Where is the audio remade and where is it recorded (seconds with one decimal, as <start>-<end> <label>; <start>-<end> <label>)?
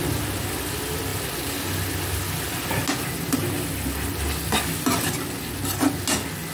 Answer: 0.0-6.5 recorded